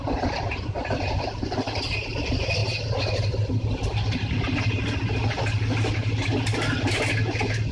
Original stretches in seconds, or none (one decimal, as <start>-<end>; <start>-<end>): 0.0-7.7